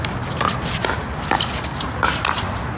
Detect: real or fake real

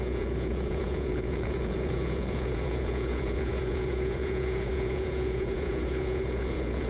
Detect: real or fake fake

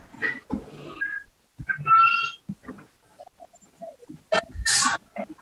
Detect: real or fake real